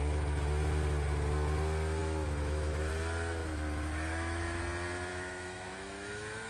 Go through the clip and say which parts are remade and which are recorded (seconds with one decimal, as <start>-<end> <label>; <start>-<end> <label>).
0.0-2.0 recorded; 2.0-2.9 remade; 2.9-3.4 recorded; 3.4-4.6 remade; 4.6-5.1 recorded; 5.1-6.5 remade